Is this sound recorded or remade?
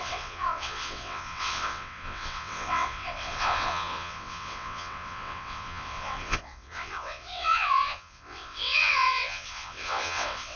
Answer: remade